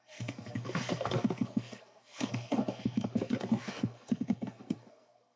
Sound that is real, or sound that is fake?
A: fake